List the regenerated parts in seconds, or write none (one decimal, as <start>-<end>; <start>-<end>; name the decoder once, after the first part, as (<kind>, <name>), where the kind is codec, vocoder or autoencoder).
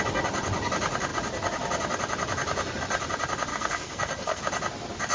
3.5-4.4 (codec, SNAC)